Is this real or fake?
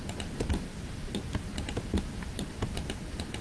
real